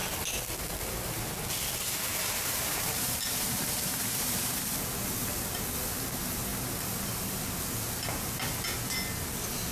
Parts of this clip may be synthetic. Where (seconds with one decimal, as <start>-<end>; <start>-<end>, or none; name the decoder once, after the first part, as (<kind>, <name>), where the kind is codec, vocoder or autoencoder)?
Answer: 2.1-4.6 (vocoder, BigVGAN v2)